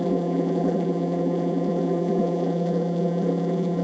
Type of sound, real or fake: fake